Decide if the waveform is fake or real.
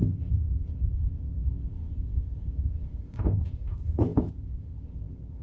fake